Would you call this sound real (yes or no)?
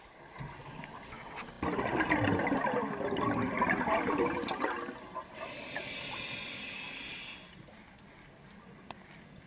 yes